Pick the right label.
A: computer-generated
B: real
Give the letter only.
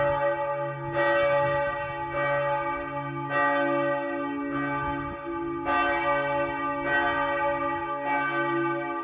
B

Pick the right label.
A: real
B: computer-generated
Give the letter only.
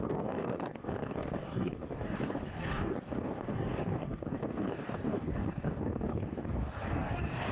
B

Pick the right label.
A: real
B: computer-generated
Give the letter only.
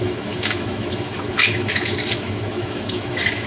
B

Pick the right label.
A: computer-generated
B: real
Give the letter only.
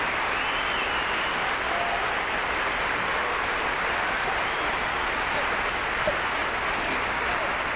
B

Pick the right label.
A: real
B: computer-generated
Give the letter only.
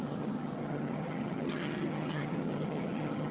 B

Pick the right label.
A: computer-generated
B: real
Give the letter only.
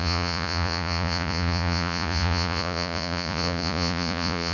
A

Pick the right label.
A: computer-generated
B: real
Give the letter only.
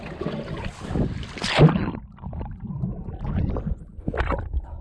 B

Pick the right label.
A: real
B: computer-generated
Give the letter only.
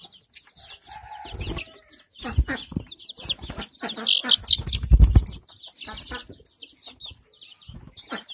A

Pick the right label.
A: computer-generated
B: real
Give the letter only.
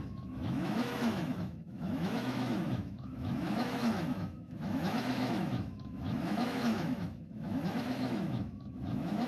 A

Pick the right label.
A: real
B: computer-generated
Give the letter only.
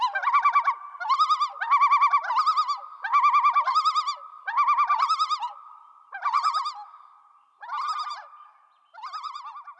A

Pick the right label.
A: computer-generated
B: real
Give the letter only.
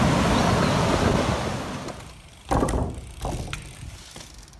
B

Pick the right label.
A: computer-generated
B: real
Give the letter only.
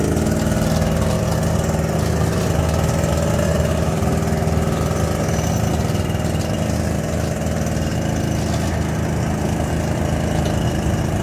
B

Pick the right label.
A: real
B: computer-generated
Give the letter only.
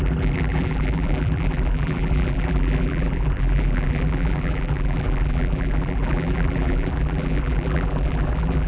B